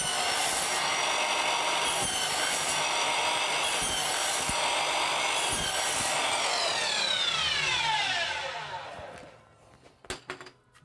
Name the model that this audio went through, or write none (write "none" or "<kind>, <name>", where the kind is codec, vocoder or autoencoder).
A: none